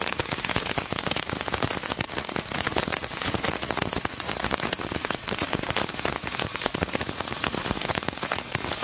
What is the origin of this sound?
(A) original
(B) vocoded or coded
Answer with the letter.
B